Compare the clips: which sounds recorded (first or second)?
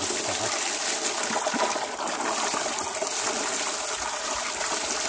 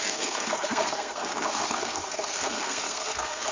first